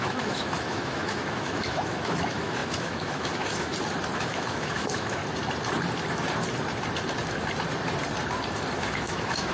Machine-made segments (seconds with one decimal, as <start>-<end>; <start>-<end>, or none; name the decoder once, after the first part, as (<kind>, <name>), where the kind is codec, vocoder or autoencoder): 0.0-3.7 (autoencoder, DAC-VAE); 4.2-5.2; 8.8-9.5